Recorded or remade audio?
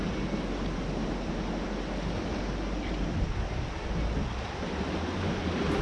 recorded